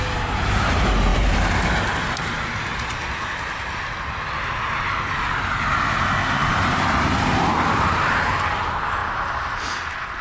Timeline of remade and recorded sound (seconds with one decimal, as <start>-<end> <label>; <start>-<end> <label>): 0.0-1.1 recorded; 1.1-1.7 remade; 1.7-6.4 recorded; 6.4-8.5 remade; 8.5-10.2 recorded